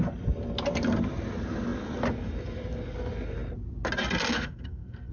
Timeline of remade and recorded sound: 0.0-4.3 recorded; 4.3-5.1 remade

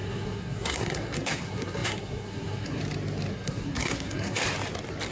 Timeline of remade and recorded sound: 0.0-2.8 remade; 2.8-3.3 recorded; 3.3-4.4 remade; 4.4-5.1 recorded

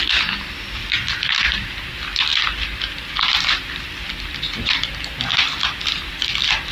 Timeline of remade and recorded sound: 0.0-6.7 recorded

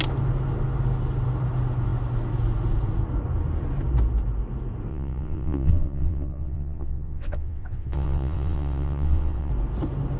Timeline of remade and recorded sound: 0.0-4.9 recorded; 4.9-9.5 remade; 9.5-10.2 recorded

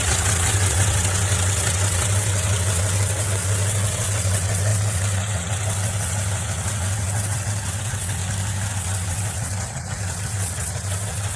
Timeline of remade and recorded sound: 0.0-8.2 remade; 8.2-8.7 recorded; 8.7-11.4 remade

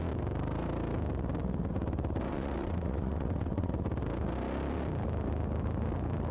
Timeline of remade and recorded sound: 0.0-2.3 recorded; 2.3-3.7 remade; 3.7-6.3 recorded